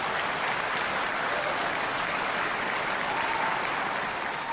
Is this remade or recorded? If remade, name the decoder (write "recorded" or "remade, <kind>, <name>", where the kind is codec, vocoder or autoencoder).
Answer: recorded